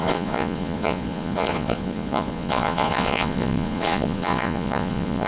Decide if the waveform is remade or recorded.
remade